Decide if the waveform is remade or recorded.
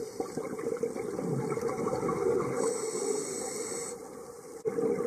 recorded